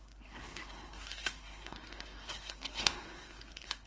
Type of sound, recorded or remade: remade